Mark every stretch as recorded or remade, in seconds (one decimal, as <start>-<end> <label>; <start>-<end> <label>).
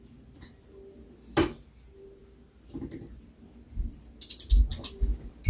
0.0-5.5 recorded